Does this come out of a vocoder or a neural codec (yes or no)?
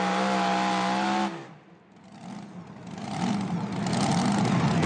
no